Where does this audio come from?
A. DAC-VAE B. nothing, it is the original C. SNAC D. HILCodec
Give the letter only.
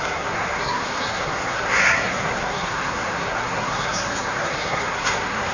C